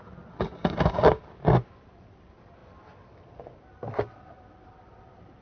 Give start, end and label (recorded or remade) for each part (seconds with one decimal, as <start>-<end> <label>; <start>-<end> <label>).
0.0-0.6 recorded; 0.6-1.2 remade; 1.2-5.4 recorded